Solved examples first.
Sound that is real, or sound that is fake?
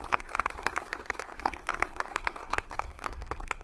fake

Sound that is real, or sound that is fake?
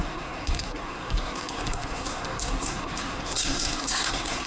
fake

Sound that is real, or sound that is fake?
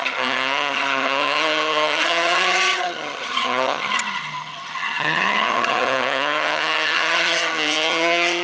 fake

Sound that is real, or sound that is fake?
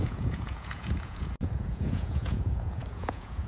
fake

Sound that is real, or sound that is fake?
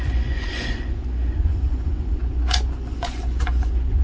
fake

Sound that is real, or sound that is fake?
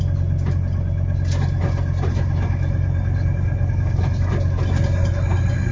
real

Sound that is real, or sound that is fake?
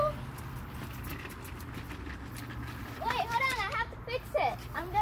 real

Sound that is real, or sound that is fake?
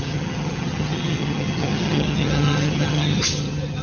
fake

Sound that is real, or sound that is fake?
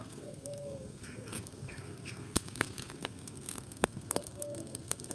fake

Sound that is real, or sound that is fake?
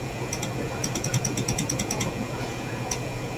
fake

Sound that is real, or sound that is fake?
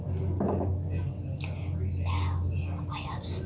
real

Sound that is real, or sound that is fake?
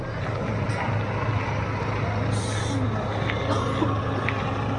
real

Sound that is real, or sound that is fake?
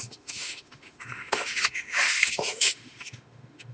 fake